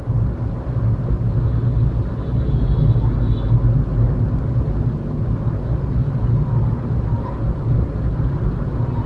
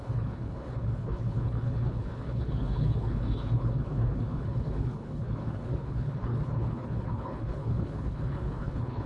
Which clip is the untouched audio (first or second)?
first